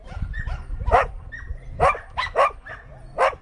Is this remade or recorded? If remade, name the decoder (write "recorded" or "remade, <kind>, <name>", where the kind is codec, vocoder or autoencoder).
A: recorded